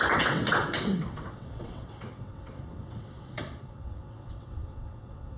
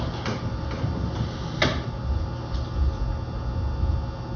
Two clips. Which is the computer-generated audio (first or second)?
first